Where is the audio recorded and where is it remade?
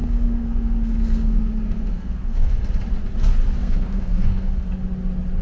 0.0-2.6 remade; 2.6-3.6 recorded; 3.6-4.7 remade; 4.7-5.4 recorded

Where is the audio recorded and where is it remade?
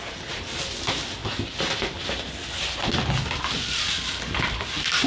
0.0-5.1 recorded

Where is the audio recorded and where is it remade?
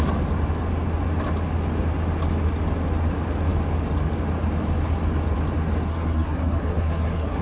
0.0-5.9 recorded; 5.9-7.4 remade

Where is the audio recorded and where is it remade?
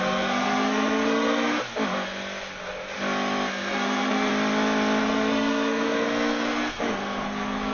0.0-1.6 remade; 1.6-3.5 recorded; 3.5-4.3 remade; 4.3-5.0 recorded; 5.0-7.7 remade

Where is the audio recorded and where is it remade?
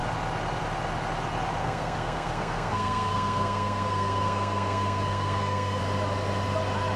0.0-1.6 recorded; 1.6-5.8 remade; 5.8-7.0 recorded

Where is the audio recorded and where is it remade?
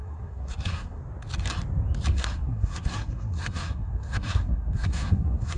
0.0-1.0 remade; 1.0-2.1 recorded; 2.1-5.6 remade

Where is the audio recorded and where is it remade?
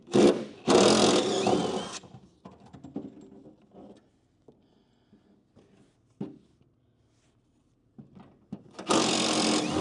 0.0-9.8 recorded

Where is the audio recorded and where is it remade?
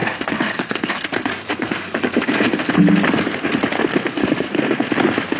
0.0-2.7 remade; 2.7-3.9 recorded; 3.9-4.9 remade; 4.9-5.4 recorded